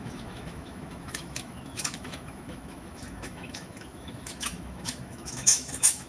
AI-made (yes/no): yes